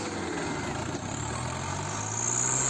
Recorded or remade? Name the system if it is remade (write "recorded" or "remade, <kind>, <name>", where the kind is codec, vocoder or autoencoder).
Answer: recorded